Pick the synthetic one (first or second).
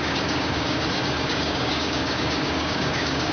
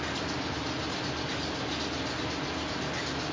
first